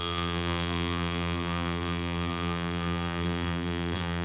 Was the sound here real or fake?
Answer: fake